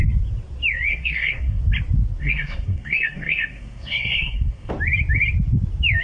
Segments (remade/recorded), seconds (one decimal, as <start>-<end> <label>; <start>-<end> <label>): 0.0-0.9 recorded; 0.9-1.6 remade; 1.6-2.2 recorded; 2.2-4.7 remade; 4.7-6.0 recorded